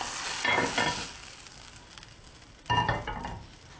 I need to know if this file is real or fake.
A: real